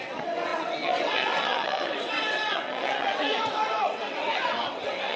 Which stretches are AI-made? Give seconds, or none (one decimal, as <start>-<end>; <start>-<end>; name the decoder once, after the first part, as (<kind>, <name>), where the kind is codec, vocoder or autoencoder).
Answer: 0.0-5.2 (vocoder, WaveNeXt)